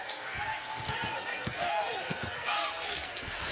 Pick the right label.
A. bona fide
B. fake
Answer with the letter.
B